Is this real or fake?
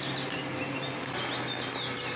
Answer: real